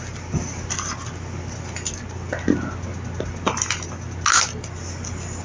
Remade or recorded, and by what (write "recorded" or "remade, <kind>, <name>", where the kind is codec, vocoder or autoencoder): recorded